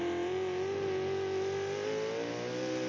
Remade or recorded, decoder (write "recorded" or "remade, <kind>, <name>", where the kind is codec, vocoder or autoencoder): recorded